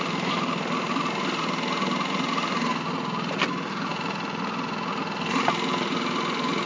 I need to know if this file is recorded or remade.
recorded